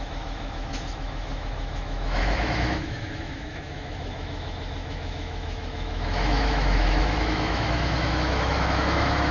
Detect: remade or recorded remade